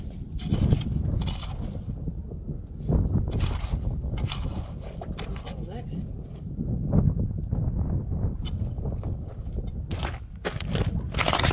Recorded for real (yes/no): yes